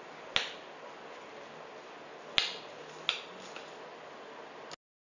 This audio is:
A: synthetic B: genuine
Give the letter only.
B